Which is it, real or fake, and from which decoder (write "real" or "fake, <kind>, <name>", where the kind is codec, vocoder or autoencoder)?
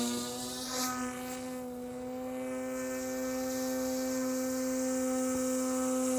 real